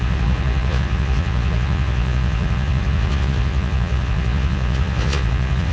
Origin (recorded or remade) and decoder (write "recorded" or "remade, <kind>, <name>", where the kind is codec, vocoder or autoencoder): remade, vocoder, Vocos